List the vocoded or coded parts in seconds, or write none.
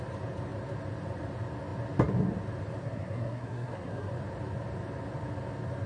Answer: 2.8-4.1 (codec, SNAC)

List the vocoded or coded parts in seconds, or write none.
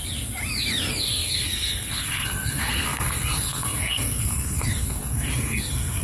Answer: 1.0-6.0 (codec, SNAC)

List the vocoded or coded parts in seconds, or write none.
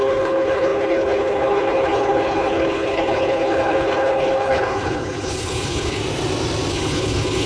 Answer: 0.0-6.0 (codec, HILCodec); 6.7-7.5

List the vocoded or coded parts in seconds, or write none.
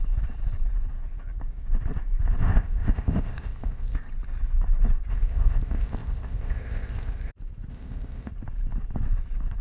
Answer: 2.4-4.0 (codec, ZipCodec); 5.1-7.3; 7.7-8.3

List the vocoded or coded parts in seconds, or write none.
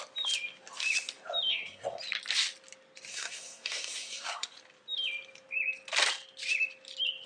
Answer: 1.5-2.0 (codec, SNAC); 3.1-4.5